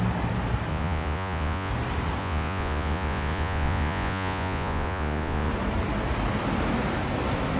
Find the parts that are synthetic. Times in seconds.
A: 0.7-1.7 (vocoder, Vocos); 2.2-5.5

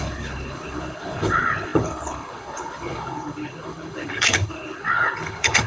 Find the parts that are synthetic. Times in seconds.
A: 0.0-5.7 (codec, HILCodec)

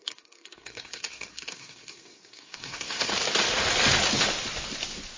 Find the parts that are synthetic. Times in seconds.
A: 0.0-3.1 (codec, SNAC)

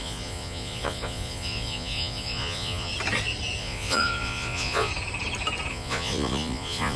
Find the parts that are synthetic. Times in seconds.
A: 0.0-2.9 (vocoder, Vocos); 3.6-4.9; 5.7-7.0

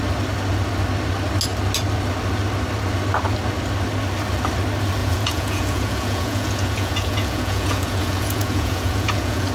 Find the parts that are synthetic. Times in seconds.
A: 5.0-9.5 (vocoder, Vocos)

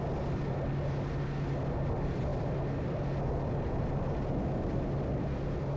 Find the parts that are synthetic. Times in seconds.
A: none